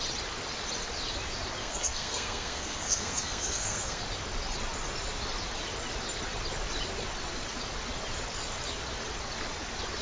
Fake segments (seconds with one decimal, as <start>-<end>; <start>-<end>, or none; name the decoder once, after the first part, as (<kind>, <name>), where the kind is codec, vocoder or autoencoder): 1.6-4.0 (codec, SNAC)